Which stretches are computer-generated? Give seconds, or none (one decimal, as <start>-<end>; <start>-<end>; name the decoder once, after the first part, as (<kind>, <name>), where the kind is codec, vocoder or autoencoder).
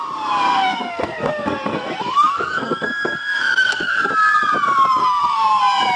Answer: 0.5-4.1 (codec, SNAC); 5.0-5.6